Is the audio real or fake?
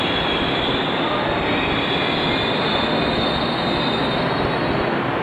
real